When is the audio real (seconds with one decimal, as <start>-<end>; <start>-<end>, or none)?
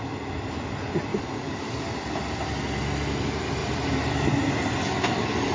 0.0-1.1; 1.8-3.6; 4.5-5.5